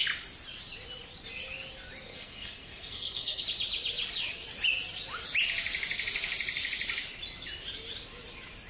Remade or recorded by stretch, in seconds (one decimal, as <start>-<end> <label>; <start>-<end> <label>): 0.0-2.1 recorded; 2.1-3.4 remade; 3.4-8.7 recorded